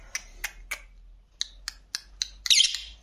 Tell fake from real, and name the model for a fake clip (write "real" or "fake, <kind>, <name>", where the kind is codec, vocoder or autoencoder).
real